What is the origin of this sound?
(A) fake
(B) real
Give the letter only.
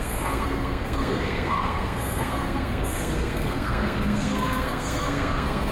A